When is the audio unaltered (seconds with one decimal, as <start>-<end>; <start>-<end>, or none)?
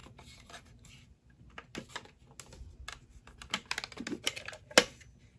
1.0-5.4